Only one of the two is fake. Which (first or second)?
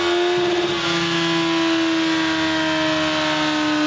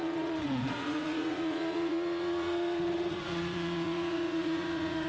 second